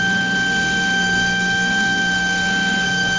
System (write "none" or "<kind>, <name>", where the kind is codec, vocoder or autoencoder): codec, SNAC